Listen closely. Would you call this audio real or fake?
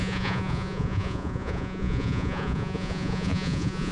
fake